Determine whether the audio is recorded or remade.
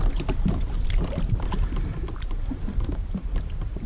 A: recorded